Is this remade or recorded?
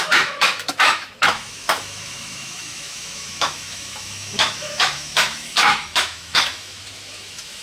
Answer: remade